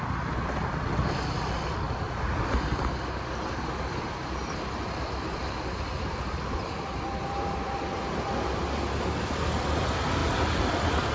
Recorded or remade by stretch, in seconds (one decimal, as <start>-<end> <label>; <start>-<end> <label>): 0.0-11.1 recorded